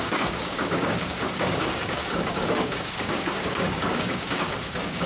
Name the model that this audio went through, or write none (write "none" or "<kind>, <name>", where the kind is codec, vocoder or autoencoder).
codec, DAC